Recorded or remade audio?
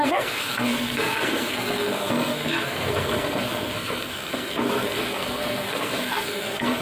remade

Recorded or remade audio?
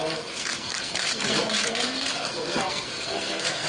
remade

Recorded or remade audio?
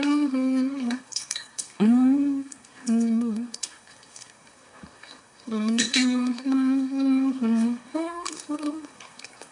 remade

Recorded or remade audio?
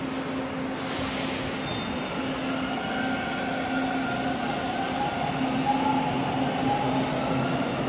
recorded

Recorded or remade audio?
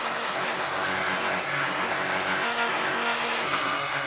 remade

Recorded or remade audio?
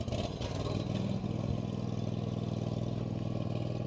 recorded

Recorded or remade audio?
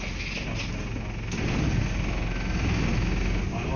recorded